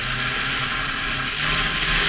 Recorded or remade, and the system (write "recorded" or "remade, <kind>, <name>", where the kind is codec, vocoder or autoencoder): recorded